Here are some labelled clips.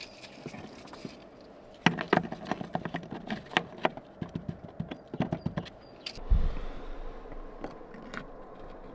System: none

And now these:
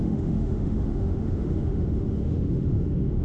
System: autoencoder, DAC-VAE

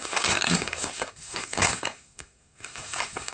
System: codec, SNAC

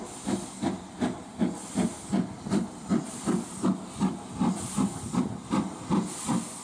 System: none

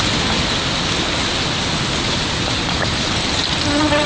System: none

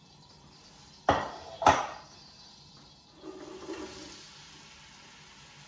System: none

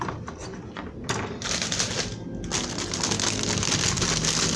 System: none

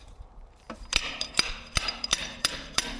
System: vocoder, BigVGAN v2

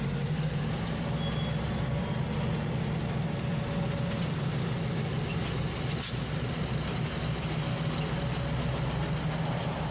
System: none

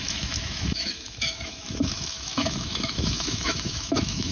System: autoencoder, DAC-VAE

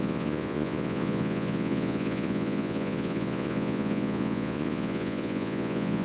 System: vocoder, Vocos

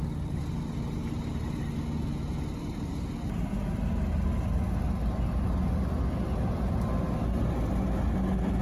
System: none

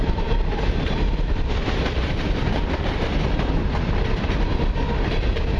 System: vocoder, BigVGAN v2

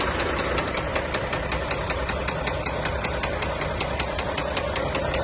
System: vocoder, BigVGAN v2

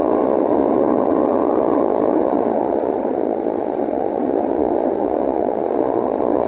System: vocoder, Vocos